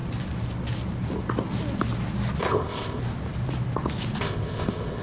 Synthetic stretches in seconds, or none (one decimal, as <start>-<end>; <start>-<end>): 2.4-3.0; 4.2-5.0